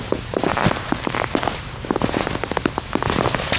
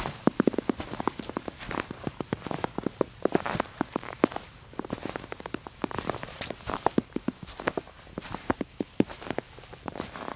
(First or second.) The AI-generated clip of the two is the second